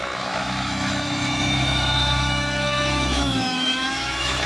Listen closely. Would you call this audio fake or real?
fake